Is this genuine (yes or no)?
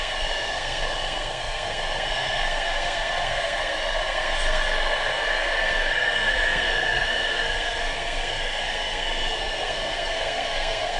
no